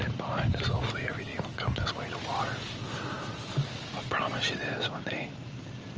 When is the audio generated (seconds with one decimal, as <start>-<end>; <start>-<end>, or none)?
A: none